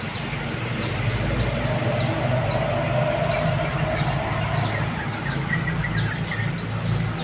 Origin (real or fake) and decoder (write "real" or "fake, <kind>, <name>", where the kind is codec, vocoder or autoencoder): real